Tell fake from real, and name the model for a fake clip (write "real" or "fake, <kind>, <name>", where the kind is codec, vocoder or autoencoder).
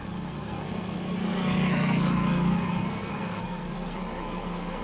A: fake, codec, SNAC